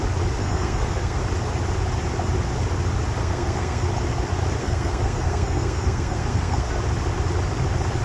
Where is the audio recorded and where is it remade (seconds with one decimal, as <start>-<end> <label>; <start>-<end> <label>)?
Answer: 0.0-0.4 recorded; 0.4-1.2 remade; 1.2-3.2 recorded; 3.2-3.9 remade; 3.9-4.6 recorded; 4.6-6.7 remade; 6.7-8.0 recorded